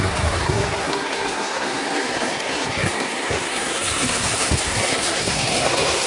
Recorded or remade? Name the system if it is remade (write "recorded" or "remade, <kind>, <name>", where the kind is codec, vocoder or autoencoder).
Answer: remade, codec, SNAC